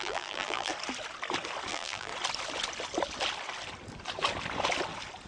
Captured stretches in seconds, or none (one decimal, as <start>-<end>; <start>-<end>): 0.7-1.7; 2.1-5.3